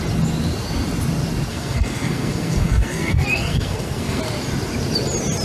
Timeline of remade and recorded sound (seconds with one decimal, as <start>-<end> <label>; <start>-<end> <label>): 0.0-1.5 recorded; 1.5-4.2 remade; 4.2-5.4 recorded